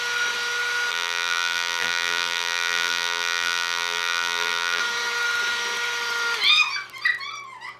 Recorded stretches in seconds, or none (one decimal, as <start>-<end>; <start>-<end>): 0.0-0.9; 4.8-7.8